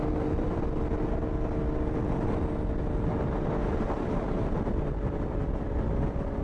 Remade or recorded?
recorded